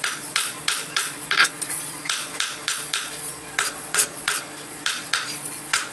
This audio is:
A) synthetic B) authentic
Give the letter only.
A